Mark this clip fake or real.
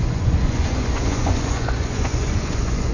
fake